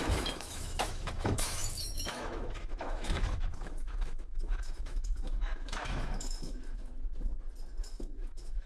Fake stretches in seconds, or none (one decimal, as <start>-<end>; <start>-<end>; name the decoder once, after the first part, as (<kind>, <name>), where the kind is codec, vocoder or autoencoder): 0.0-6.9 (autoencoder, DAC-VAE); 7.8-8.7